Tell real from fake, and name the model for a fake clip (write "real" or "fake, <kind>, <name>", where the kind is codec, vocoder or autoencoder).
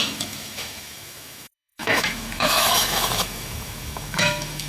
fake, autoencoder, DAC-VAE